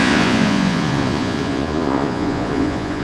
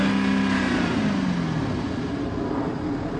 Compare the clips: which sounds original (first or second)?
second